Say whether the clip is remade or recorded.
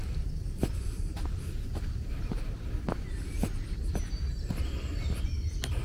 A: recorded